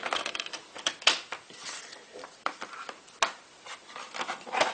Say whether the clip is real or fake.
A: fake